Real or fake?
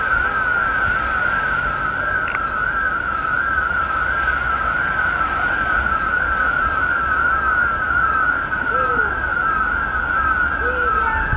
real